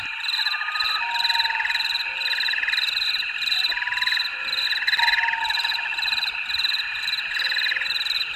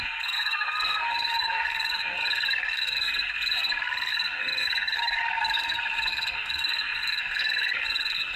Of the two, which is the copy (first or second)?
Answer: second